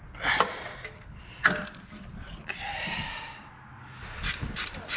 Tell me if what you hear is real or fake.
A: real